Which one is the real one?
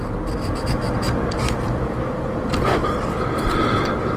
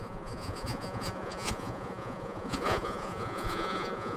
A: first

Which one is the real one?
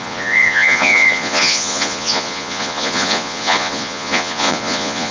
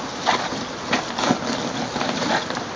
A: second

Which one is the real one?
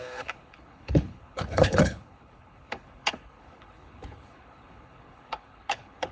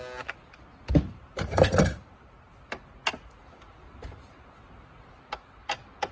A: second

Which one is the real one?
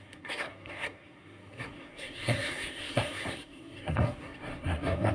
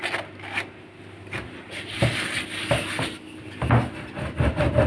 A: second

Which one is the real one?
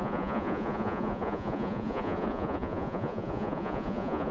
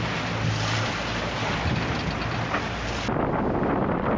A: second